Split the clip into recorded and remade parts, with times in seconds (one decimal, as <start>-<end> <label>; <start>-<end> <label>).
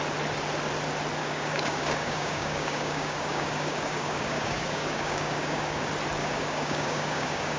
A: 0.0-1.2 recorded; 1.2-5.8 remade; 5.8-6.2 recorded; 6.2-7.6 remade